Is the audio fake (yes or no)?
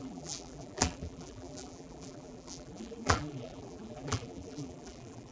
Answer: yes